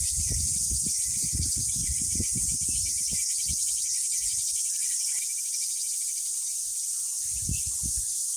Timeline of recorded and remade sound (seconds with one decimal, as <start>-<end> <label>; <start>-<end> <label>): 0.0-6.7 remade; 6.7-8.0 recorded; 8.0-8.4 remade